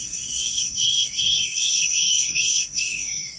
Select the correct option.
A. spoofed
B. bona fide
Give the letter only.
A